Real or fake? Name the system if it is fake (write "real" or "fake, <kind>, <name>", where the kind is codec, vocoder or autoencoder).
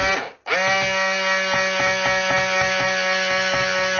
real